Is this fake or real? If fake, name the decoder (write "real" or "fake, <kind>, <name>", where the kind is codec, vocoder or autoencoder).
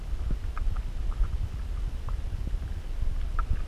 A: real